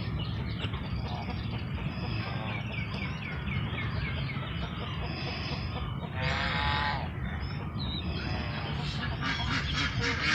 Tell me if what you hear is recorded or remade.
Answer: recorded